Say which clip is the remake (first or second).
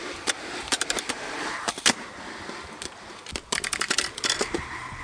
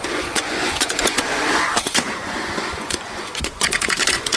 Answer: second